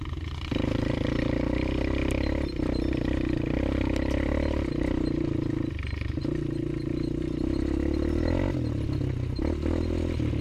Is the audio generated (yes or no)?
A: no